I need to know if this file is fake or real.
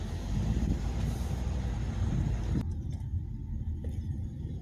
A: fake